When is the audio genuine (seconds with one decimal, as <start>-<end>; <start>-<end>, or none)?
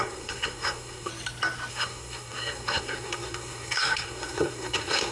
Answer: 1.1-1.7